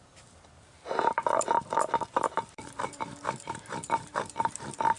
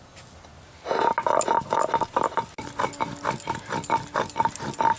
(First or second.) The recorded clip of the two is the second